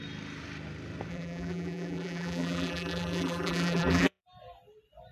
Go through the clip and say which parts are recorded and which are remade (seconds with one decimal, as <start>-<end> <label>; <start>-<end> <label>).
0.0-1.1 recorded; 1.1-4.2 remade; 4.2-5.1 recorded